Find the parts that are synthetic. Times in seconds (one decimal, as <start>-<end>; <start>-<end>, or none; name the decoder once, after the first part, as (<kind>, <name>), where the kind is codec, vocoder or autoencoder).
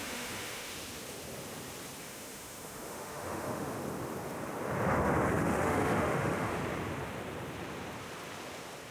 0.0-0.7 (autoencoder, DAC-VAE); 2.0-3.8; 5.3-6.6